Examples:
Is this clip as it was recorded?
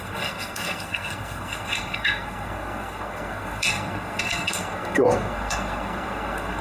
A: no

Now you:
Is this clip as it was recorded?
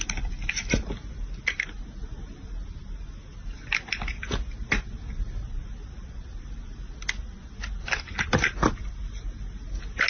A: yes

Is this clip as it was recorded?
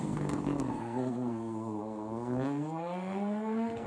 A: no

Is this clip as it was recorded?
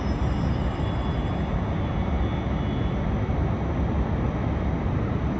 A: yes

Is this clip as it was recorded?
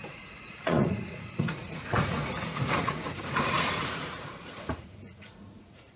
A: no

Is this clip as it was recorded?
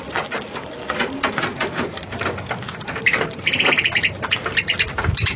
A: yes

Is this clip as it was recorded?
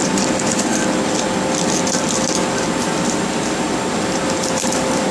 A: no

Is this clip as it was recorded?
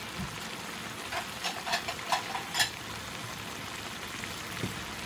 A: yes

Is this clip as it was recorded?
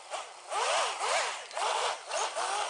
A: yes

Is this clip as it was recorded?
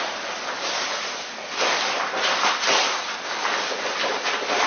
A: yes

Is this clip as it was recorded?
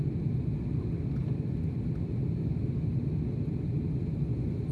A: yes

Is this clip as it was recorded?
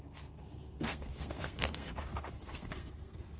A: no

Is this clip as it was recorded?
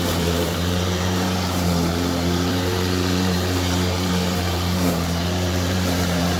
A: no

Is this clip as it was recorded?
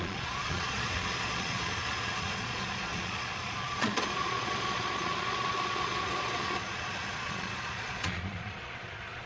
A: no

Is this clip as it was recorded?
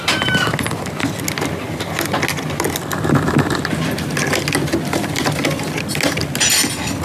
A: yes